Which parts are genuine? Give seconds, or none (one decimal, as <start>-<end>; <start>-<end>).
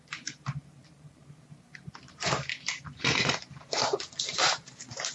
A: none